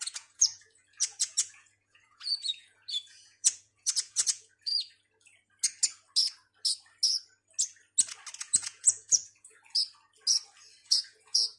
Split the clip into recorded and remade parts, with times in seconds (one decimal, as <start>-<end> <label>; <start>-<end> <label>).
0.0-4.7 remade; 4.7-8.4 recorded; 8.4-9.6 remade; 9.6-10.8 recorded; 10.8-11.6 remade